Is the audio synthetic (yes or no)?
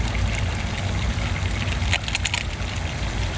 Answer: no